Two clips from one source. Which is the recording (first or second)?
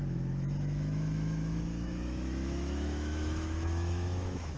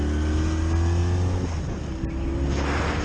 second